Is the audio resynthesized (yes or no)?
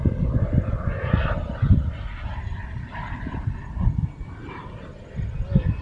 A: no